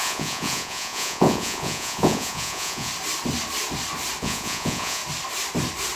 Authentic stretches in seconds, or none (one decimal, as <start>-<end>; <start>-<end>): 2.9-4.2; 5.0-6.0